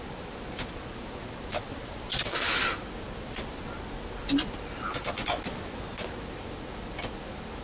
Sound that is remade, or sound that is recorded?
recorded